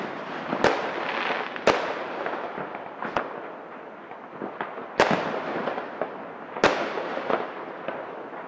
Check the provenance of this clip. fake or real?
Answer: real